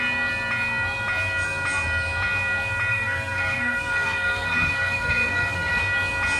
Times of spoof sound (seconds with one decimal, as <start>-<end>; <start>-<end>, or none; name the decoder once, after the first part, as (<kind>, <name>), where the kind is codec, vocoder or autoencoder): 2.9-5.8 (codec, SNAC)